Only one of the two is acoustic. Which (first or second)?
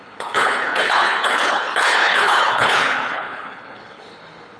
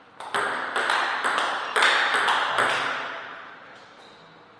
second